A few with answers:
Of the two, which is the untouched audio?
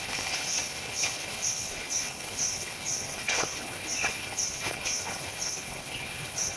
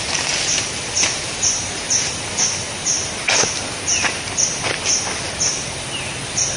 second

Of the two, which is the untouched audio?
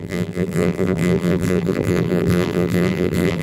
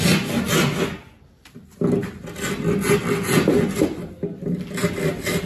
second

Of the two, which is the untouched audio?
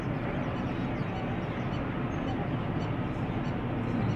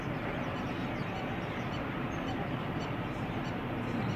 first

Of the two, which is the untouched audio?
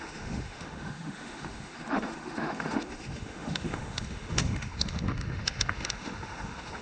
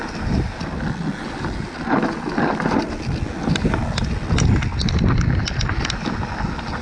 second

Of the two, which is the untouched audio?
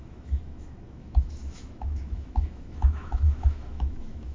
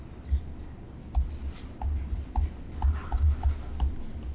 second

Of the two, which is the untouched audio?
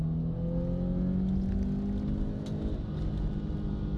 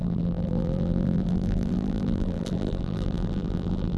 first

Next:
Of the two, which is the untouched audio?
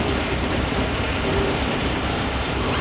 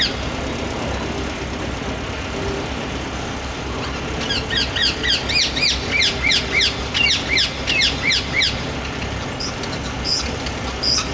second